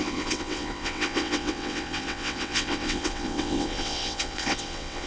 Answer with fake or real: fake